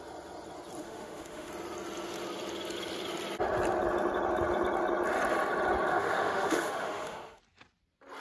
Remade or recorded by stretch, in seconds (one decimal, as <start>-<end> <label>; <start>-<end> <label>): 0.0-0.8 recorded; 0.8-1.5 remade; 1.5-5.9 recorded; 5.9-7.4 remade; 7.4-8.2 recorded